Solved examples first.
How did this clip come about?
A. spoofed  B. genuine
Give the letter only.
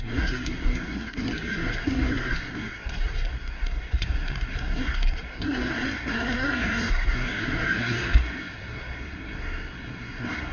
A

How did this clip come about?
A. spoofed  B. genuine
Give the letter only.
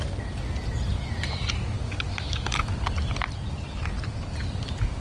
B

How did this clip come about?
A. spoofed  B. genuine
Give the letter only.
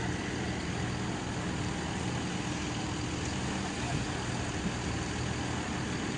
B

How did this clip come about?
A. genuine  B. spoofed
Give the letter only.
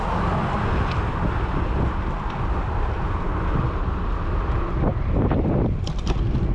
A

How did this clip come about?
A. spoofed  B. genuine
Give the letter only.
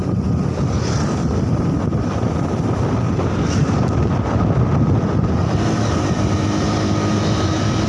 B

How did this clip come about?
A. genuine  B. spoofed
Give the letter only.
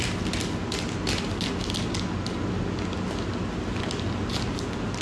A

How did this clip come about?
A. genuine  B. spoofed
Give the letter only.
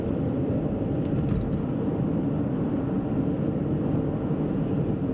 A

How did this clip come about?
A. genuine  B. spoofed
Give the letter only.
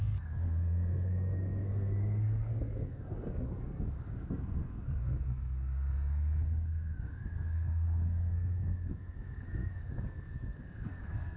B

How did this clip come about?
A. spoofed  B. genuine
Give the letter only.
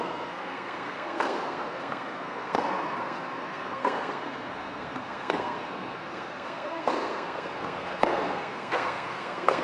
A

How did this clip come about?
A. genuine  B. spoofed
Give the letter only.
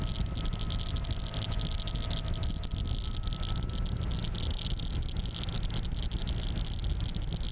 A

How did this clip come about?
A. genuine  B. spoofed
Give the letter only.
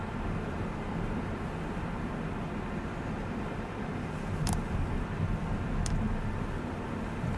A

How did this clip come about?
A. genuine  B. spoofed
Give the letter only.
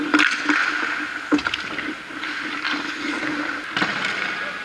A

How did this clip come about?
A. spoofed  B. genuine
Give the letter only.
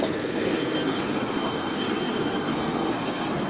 A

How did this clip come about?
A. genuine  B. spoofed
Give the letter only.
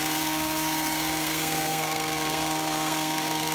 B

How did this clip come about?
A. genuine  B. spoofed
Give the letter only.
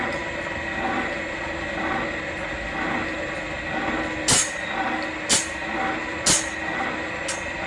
A